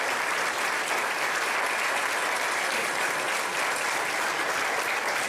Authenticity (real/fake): real